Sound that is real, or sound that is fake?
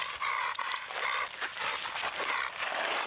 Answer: fake